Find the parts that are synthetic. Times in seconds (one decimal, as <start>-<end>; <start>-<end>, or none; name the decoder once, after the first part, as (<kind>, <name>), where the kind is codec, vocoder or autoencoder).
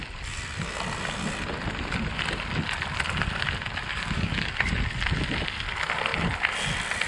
3.9-4.5 (codec, DAC)